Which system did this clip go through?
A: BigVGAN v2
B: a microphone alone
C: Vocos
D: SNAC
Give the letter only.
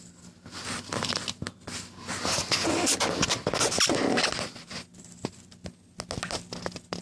B